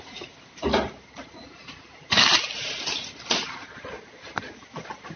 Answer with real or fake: real